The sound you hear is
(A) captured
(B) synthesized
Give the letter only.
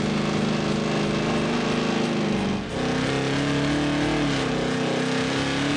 A